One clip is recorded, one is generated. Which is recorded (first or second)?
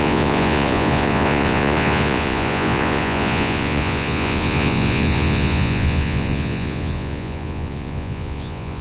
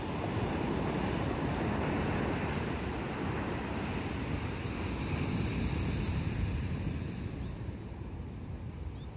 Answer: second